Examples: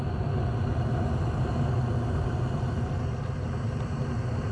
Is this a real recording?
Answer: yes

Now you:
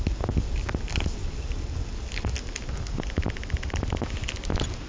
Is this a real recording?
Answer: yes